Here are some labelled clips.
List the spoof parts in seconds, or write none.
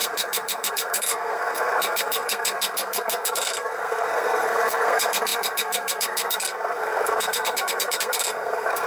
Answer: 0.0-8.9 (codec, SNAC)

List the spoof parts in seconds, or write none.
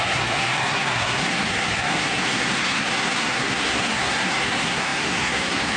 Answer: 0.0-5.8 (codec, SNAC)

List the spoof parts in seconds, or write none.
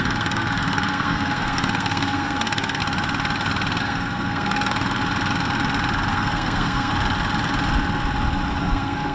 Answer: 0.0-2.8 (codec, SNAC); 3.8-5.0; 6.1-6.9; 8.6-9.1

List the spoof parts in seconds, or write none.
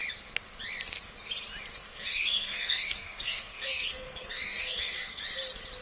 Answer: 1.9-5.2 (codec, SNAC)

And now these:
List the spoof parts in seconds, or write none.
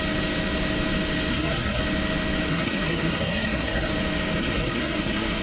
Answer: 1.3-1.8 (codec, SNAC); 2.5-3.9; 4.4-5.4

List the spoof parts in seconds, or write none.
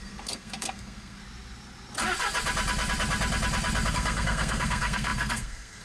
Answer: 0.0-1.2 (codec, SNAC); 3.9-5.8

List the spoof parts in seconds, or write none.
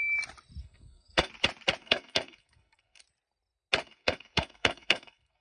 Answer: 0.6-1.3 (codec, SNAC); 1.8-3.0; 3.8-5.4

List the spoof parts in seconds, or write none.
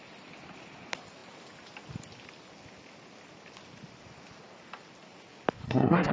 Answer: 5.6-6.1 (codec, SNAC)